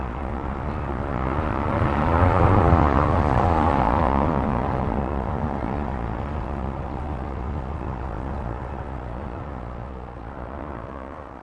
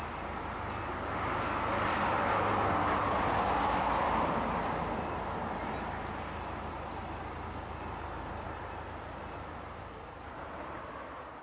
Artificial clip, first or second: first